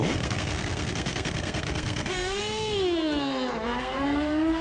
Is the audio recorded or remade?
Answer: remade